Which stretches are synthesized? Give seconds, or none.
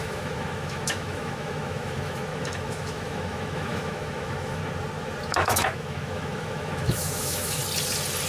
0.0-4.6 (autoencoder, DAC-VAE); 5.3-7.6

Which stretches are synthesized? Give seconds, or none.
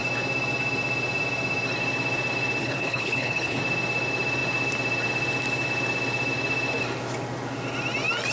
2.6-3.6 (codec, HILCodec)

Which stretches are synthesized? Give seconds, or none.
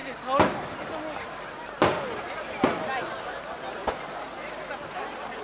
none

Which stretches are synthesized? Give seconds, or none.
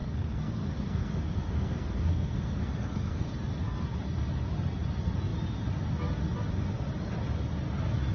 0.0-3.3 (codec, SNAC)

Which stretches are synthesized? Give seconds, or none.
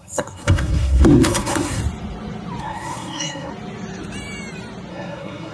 0.0-1.8 (codec, SNAC); 2.6-3.5; 4.9-5.5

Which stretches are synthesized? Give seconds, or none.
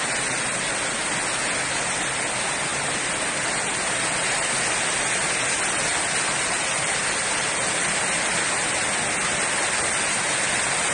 none